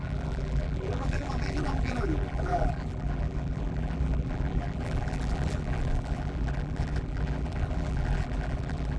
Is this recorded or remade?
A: remade